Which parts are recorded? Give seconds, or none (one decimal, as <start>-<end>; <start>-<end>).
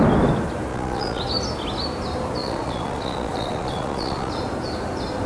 0.0-0.7; 1.2-2.4; 4.3-5.3